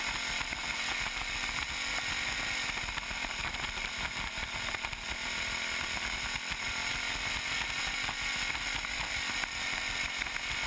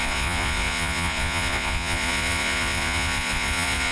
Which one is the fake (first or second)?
second